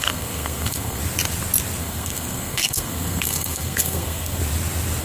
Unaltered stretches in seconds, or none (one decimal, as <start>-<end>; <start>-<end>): 1.0-1.8; 4.4-5.0